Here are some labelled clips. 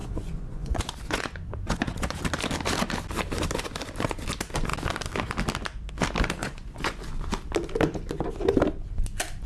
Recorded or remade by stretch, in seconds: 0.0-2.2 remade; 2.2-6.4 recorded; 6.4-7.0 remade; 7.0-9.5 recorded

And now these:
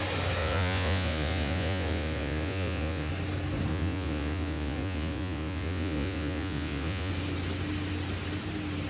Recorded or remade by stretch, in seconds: 0.0-0.4 recorded; 0.4-3.1 remade; 3.1-3.7 recorded; 3.7-7.1 remade; 7.1-8.9 recorded

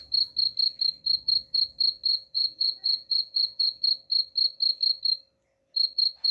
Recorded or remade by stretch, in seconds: 0.0-2.1 recorded; 2.1-3.8 remade; 3.8-6.3 recorded

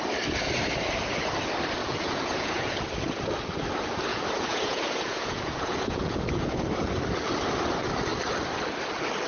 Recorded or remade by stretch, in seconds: 0.0-1.8 recorded; 1.8-2.8 remade; 2.8-4.1 recorded; 4.1-6.7 remade; 6.7-9.3 recorded